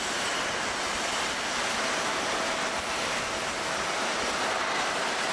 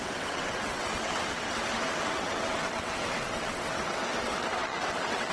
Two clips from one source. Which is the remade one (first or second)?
second